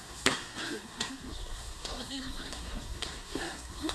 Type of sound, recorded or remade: remade